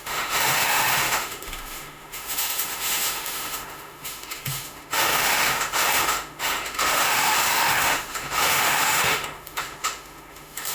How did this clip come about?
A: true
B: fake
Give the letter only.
B